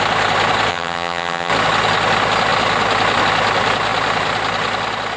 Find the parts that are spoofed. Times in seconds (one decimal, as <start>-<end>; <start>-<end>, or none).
0.7-1.5